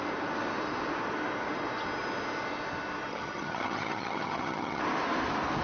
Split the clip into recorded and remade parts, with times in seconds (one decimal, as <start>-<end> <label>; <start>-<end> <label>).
0.0-3.1 recorded; 3.1-4.8 remade; 4.8-5.6 recorded